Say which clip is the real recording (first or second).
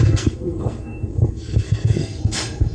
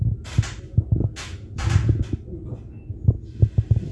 second